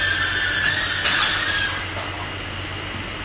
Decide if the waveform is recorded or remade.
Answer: recorded